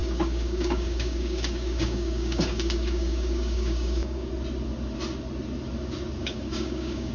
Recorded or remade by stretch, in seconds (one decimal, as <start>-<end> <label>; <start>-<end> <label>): 0.0-4.3 remade; 4.3-6.2 recorded; 6.2-7.1 remade